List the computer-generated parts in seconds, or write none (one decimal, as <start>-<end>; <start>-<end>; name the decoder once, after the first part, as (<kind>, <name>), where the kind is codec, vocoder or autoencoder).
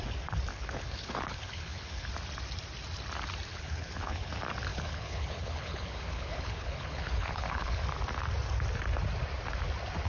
0.5-2.1 (codec, HILCodec); 3.5-4.3; 4.7-7.8